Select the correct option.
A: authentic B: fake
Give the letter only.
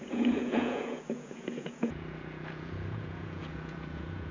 B